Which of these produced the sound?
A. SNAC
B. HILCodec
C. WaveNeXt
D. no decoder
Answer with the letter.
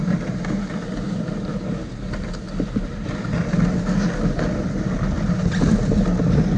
D